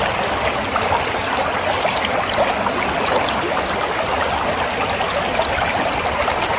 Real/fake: real